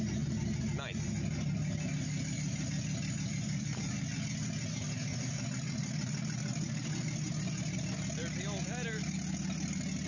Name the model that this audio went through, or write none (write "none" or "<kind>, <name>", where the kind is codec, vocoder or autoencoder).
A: none